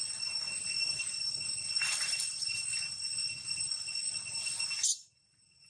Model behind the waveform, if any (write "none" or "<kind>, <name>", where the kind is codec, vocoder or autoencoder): none